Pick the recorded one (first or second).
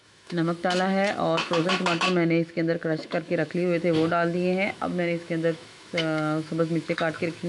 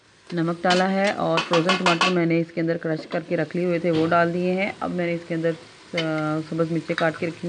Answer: second